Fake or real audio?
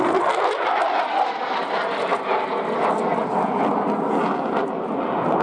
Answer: real